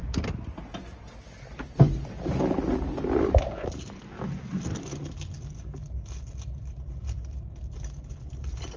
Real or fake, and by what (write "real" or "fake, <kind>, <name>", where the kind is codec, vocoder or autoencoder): real